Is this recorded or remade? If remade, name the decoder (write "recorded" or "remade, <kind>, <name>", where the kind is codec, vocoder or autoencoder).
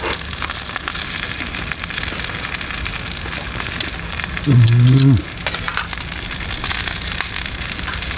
recorded